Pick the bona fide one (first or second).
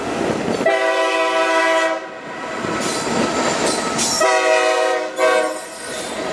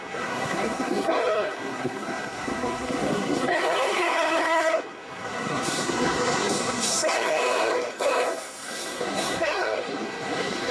first